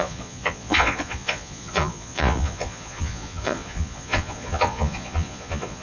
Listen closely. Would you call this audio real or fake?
fake